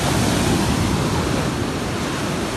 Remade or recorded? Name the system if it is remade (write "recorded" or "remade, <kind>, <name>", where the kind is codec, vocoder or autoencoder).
recorded